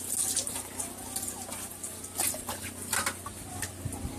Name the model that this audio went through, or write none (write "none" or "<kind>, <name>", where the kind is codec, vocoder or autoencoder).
none